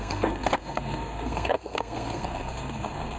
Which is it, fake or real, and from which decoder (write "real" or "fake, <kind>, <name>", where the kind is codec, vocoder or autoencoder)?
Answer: fake, codec, SNAC